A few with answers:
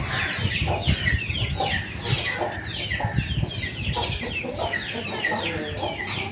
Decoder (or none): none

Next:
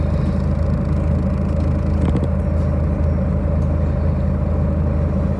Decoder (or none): none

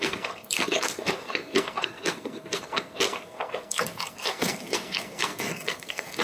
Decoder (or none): codec, SNAC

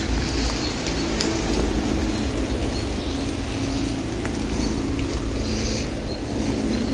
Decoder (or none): none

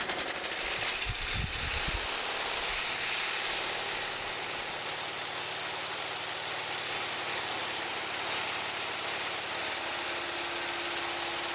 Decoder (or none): none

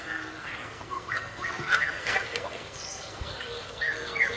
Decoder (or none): codec, SNAC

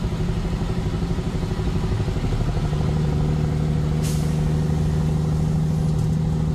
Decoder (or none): none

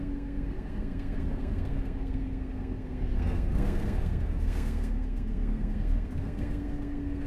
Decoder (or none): codec, SNAC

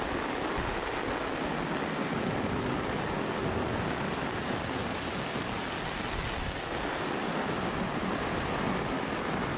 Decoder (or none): none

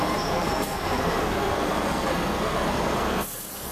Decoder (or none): codec, SNAC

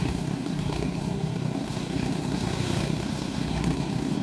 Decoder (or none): codec, SNAC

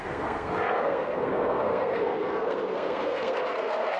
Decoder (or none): codec, SNAC